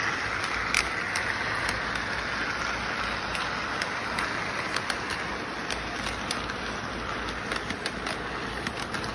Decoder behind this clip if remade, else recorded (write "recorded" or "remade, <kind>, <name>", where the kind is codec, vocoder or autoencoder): recorded